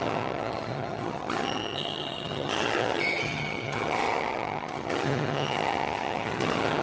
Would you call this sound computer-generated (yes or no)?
yes